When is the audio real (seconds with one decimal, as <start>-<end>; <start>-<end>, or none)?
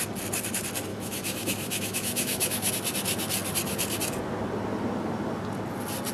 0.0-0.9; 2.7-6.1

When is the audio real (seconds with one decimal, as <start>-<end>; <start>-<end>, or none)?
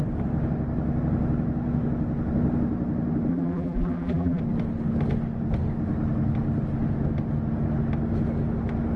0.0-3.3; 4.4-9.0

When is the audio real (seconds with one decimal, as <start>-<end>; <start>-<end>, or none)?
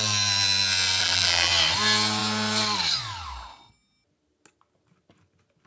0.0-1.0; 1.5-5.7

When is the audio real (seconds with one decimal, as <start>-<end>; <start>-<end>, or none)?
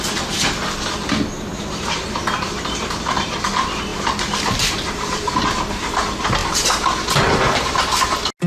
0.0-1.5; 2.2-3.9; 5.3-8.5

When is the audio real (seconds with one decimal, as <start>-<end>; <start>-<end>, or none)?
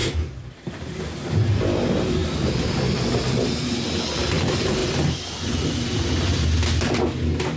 0.7-2.2; 2.8-4.8; 5.7-7.6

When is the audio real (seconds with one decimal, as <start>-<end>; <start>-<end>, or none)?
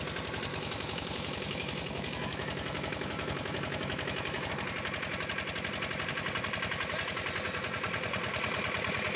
0.0-0.5; 4.5-9.2